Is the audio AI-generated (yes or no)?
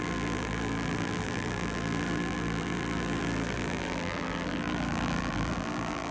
yes